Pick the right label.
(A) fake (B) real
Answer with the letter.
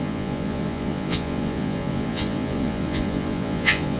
A